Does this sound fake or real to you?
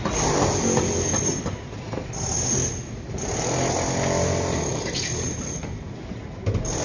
real